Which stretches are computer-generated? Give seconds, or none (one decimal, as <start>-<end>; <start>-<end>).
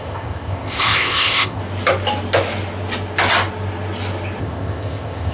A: 0.0-1.6; 4.4-5.3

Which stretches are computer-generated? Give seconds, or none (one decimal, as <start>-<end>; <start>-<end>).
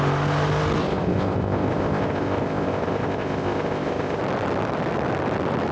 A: 0.8-4.2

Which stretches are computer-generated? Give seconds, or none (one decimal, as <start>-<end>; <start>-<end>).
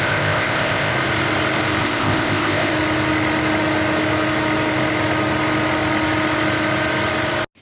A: 0.0-0.9; 1.8-2.7